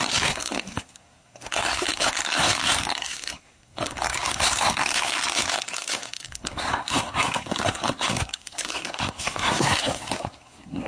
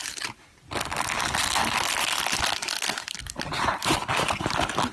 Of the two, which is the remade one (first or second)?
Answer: first